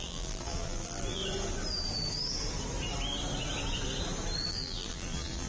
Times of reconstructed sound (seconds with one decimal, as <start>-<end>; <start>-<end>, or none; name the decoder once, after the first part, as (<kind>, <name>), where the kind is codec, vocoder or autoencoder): 0.0-1.2 (vocoder, BigVGAN v2); 4.5-5.5